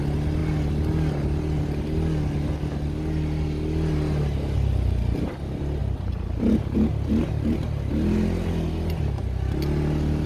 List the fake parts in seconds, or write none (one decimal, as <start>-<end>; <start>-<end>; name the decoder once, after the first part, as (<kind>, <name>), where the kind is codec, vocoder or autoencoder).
none